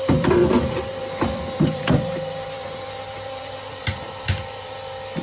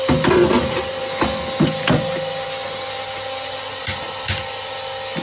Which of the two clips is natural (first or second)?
second